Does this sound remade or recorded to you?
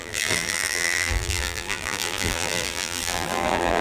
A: remade